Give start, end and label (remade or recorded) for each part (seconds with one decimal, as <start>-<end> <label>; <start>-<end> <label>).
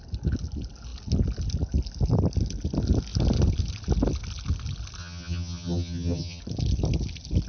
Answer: 0.0-5.0 recorded; 5.0-6.4 remade; 6.4-7.5 recorded